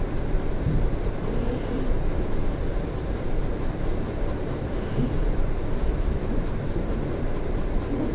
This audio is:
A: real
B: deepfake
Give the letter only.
B